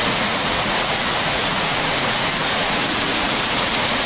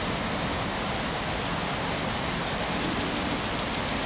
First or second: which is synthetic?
first